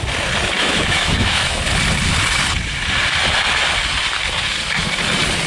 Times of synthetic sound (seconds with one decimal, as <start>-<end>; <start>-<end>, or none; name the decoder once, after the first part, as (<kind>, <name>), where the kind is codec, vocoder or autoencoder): 0.6-1.6 (autoencoder, DAC-VAE)